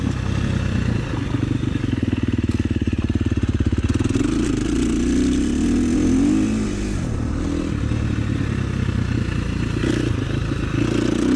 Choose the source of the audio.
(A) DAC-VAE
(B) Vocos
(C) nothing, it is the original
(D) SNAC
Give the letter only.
C